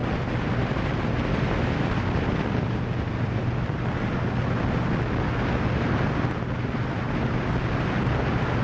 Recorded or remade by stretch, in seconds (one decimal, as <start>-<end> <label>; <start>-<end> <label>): 0.0-8.6 recorded